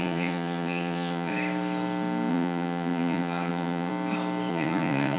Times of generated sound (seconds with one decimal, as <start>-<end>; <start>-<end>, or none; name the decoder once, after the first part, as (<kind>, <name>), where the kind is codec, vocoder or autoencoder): 0.0-1.3 (vocoder, Vocos); 2.3-3.9; 4.5-5.2